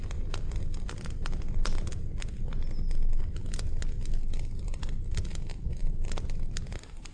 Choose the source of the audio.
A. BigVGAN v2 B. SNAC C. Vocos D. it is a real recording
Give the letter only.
D